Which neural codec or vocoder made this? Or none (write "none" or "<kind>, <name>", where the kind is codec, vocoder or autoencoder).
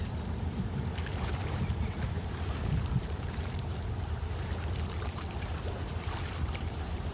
vocoder, BigVGAN v2